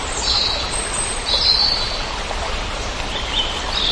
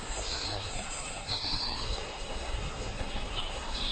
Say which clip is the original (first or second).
first